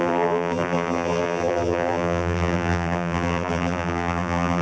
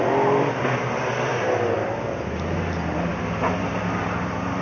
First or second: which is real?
second